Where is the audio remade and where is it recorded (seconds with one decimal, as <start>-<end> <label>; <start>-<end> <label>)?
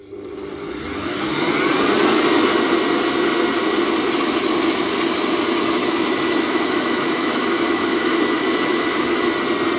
0.0-5.8 recorded; 5.8-9.3 remade; 9.3-9.8 recorded